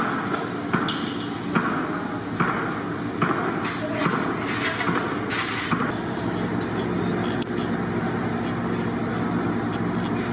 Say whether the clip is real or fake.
real